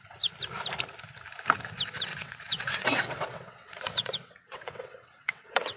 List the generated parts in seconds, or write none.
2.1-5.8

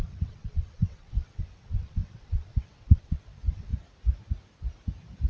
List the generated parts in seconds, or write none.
0.0-3.7

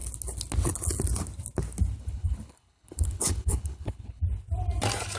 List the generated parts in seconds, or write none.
2.0-4.2

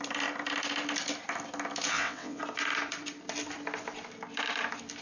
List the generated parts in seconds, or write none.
1.9-2.4

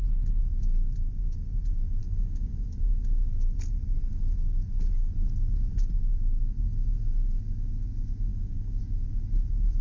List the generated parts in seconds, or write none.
2.0-3.0; 8.3-8.8

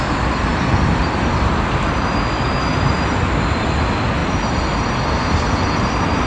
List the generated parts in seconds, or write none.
none